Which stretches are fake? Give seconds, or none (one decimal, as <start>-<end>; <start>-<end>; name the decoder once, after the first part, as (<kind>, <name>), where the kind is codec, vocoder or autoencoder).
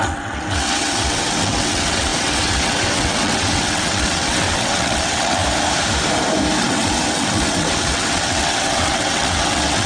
0.0-5.4 (vocoder, WaveNeXt); 6.6-9.9